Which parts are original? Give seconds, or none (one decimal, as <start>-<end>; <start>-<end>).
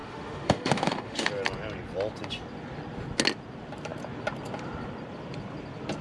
1.3-6.0